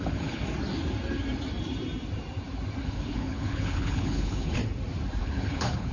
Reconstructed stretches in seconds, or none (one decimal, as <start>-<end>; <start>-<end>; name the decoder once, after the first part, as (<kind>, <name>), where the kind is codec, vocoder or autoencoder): 0.0-0.4 (codec, HILCodec); 2.8-4.6; 5.2-5.9